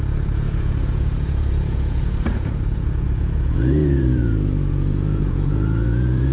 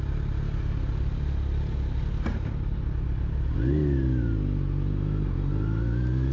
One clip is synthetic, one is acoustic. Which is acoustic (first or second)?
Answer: second